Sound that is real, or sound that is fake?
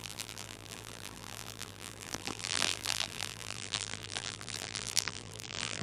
fake